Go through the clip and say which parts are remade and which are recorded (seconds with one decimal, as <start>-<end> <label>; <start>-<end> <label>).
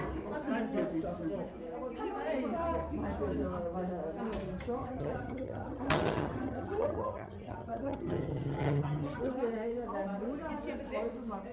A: 0.0-4.8 recorded; 4.8-9.3 remade; 9.3-11.5 recorded